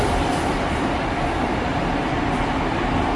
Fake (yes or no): no